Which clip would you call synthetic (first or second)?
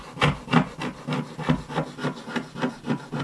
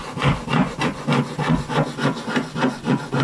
second